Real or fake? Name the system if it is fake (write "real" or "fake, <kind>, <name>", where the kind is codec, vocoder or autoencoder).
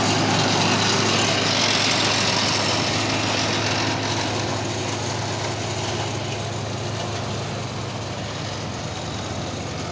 real